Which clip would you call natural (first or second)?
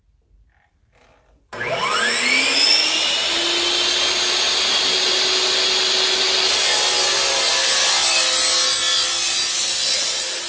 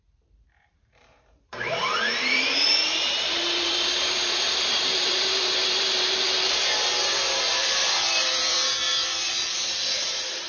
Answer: first